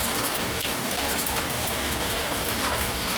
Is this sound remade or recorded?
remade